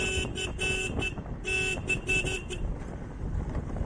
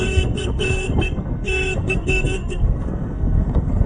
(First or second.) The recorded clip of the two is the first